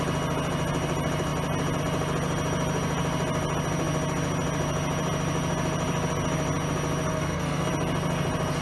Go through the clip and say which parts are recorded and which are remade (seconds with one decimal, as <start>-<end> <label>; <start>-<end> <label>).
0.0-7.1 recorded; 7.1-7.7 remade; 7.7-8.6 recorded